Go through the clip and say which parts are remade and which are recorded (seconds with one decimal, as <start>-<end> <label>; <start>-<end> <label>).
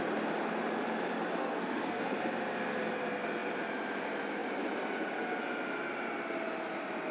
0.0-1.4 recorded; 1.4-2.0 remade; 2.0-7.1 recorded